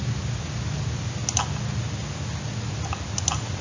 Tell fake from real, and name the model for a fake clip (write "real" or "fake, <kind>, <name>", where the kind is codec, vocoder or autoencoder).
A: real